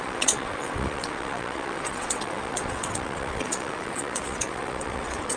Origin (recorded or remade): remade